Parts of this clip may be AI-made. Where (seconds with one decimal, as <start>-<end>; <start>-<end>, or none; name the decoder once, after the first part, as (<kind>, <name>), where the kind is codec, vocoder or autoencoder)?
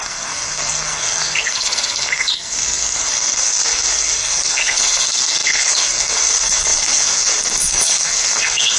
0.0-8.8 (codec, SNAC)